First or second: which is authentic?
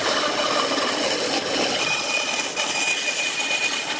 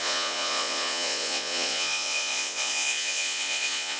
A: first